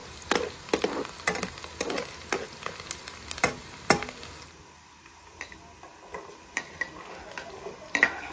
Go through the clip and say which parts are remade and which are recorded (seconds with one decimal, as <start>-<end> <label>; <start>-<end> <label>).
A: 0.0-8.3 recorded